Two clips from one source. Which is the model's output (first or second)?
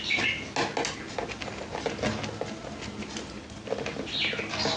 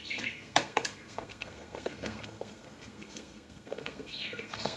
second